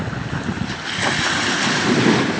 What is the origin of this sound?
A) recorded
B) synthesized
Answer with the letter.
A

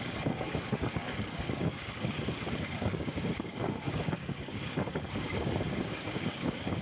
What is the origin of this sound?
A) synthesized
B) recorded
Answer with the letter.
A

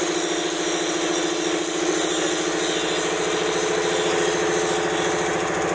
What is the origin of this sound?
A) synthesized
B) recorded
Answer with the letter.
B